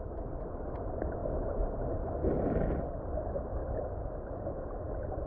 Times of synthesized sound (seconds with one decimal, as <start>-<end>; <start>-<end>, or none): 0.0-3.6; 4.6-5.3